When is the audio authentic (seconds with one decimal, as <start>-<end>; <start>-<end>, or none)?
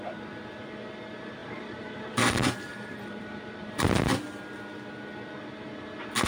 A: 0.0-1.4; 2.3-2.7; 4.0-6.3